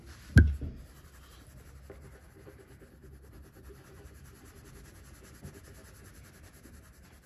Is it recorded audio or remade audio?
recorded